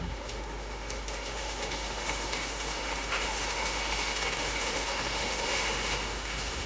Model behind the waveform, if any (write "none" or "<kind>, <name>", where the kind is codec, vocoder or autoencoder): autoencoder, DAC-VAE